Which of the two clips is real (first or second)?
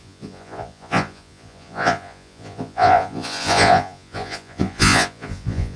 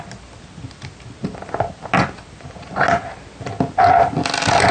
second